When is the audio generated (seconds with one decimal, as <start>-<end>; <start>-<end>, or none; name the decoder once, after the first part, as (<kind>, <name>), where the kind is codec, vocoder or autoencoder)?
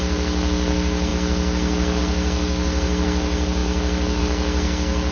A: 0.0-5.1 (codec, SNAC)